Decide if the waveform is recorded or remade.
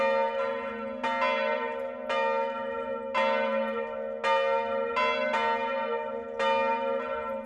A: recorded